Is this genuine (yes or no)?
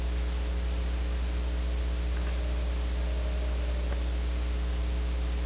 yes